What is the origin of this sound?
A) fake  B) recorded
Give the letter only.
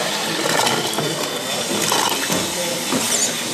B